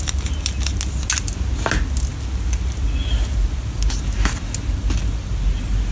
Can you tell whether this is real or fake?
real